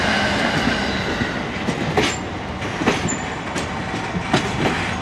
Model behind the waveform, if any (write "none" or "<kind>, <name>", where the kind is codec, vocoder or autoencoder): none